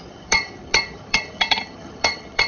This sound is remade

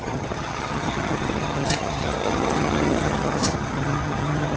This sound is remade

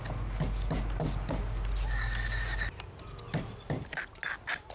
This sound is recorded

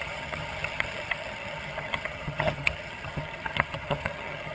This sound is remade